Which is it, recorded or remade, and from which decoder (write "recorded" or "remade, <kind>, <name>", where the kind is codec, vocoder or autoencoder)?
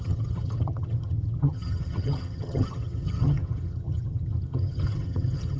remade, vocoder, HiFi-GAN